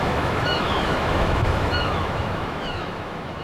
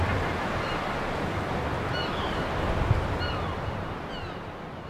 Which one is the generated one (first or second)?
first